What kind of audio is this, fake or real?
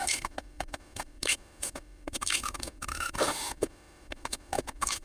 fake